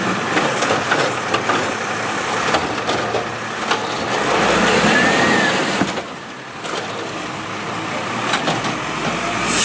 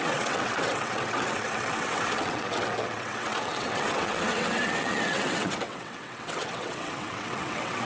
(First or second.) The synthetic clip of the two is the second